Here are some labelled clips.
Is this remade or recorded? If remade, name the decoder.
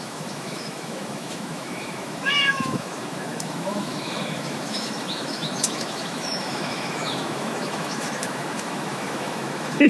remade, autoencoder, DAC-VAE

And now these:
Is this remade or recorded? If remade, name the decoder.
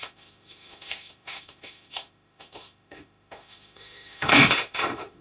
remade, autoencoder, DAC-VAE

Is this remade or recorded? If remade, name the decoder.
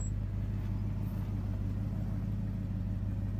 recorded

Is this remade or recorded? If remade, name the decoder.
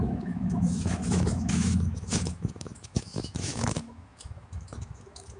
remade, autoencoder, DAC-VAE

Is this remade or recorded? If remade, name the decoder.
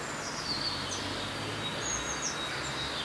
recorded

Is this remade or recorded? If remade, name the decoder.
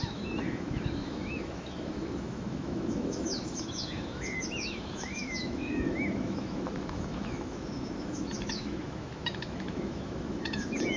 remade, autoencoder, DAC-VAE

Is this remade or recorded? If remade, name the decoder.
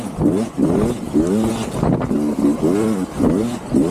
recorded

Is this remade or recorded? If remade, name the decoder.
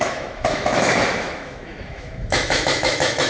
remade, autoencoder, DAC-VAE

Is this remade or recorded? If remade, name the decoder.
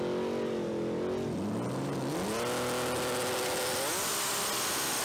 recorded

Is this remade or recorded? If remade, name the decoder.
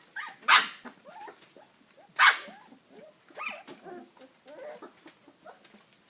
recorded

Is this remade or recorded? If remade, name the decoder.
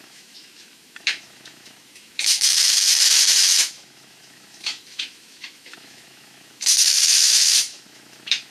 remade, autoencoder, DAC-VAE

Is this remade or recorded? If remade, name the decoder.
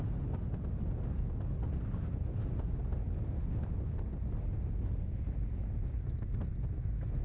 recorded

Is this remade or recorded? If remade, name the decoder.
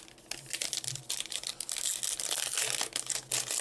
recorded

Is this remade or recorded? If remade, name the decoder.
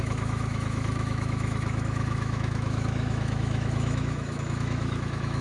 remade, autoencoder, DAC-VAE